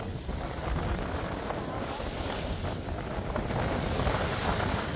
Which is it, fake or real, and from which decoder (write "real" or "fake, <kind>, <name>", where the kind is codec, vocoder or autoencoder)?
real